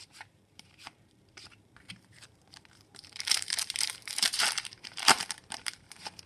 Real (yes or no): no